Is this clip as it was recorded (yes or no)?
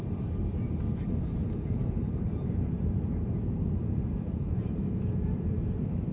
no